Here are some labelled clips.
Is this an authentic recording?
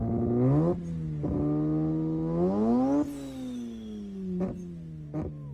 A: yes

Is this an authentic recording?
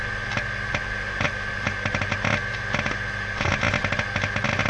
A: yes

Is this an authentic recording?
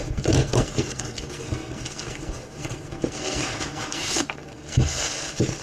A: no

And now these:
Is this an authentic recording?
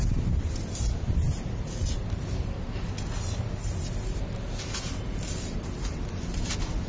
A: yes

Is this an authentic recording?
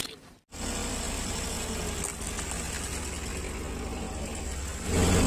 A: yes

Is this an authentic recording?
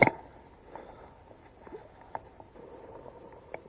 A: yes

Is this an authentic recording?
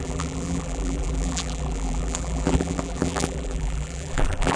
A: no